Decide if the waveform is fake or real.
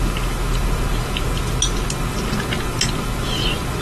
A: real